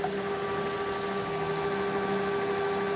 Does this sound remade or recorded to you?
recorded